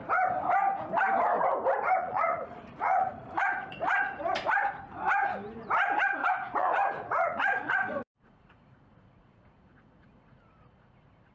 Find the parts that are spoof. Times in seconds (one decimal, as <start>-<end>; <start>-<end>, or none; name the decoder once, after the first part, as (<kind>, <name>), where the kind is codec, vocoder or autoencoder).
2.0-4.2 (vocoder, Vocos); 6.2-11.3